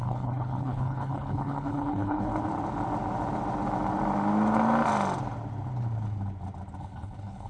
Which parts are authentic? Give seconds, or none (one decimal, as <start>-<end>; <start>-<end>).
2.3-6.8